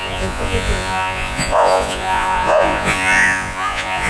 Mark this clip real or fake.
fake